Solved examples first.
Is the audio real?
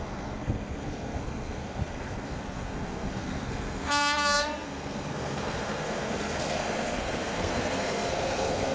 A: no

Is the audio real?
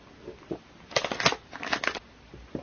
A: yes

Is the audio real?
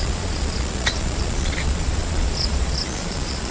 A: no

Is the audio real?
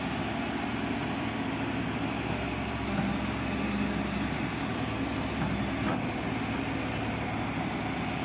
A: yes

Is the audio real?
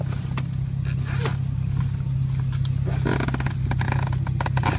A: yes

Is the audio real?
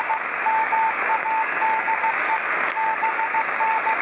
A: no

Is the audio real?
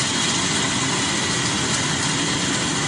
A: yes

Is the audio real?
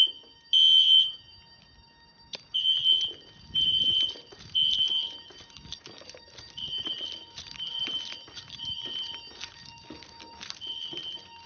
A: yes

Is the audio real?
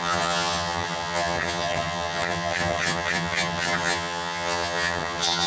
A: no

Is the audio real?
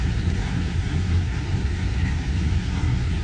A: no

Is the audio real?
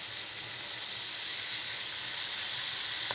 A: yes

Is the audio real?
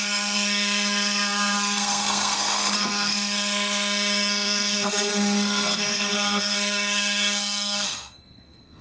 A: no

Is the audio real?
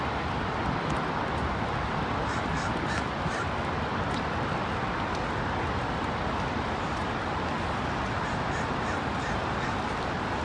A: yes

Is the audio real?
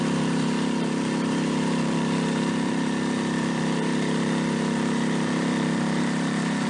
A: no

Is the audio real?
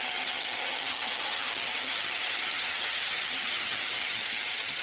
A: no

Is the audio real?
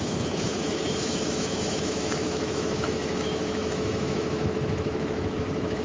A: no